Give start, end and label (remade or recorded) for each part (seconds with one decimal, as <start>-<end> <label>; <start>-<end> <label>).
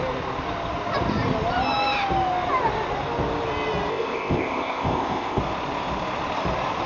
0.0-3.9 recorded; 3.9-5.4 remade; 5.4-6.9 recorded